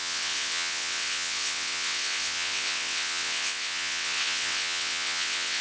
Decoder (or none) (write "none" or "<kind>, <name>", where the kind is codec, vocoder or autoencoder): vocoder, WaveNeXt